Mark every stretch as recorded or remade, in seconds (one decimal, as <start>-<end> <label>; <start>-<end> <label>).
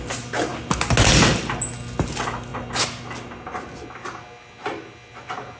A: 0.0-5.6 recorded